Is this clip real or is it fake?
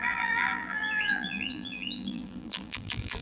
fake